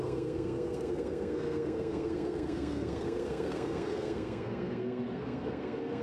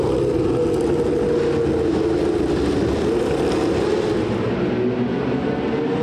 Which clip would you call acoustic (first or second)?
second